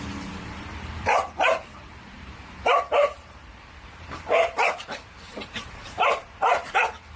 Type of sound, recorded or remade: remade